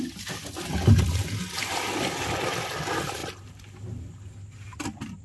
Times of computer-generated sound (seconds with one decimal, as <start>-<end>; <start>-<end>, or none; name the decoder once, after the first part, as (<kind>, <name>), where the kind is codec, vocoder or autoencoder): none